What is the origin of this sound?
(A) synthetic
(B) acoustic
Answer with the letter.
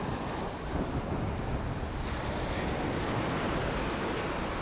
B